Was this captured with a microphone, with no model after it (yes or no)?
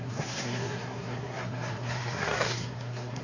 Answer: no